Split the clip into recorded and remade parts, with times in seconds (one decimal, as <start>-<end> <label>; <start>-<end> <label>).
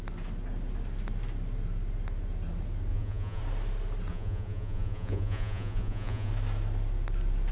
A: 0.0-2.9 recorded; 2.9-3.4 remade; 3.4-4.1 recorded; 4.1-6.3 remade; 6.3-7.5 recorded